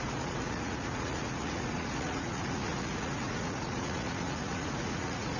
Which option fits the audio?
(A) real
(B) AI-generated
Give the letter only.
B